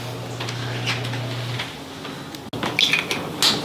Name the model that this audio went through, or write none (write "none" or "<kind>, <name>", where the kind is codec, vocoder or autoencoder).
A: none